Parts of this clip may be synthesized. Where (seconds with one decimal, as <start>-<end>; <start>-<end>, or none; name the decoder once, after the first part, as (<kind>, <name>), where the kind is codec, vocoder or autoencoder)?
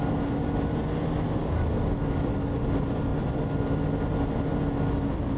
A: 1.4-2.5 (codec, DAC)